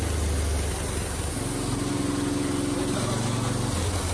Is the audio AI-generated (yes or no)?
no